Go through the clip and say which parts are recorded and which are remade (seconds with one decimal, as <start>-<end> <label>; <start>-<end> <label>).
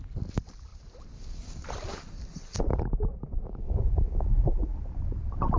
0.0-0.7 recorded; 0.7-3.6 remade; 3.6-5.6 recorded